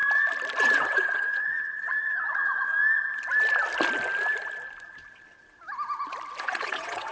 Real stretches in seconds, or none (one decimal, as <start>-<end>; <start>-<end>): 0.0-0.6; 2.7-6.4